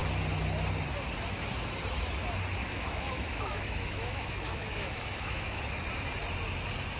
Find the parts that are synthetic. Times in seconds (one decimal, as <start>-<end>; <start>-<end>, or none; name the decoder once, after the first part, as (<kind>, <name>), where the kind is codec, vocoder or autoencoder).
2.6-5.6 (autoencoder, DAC-VAE)